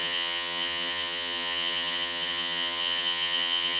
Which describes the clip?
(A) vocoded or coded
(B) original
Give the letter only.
A